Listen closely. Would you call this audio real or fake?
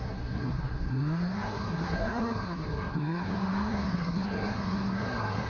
fake